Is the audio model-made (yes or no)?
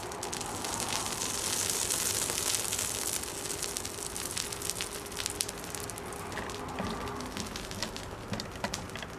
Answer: no